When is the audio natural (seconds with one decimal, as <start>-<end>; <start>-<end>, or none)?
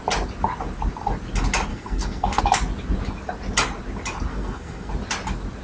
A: 0.0-1.7; 2.4-4.3; 4.9-5.6